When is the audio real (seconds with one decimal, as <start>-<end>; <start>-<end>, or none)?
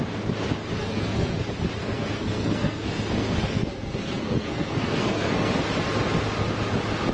0.0-0.8; 1.4-1.8; 5.5-7.1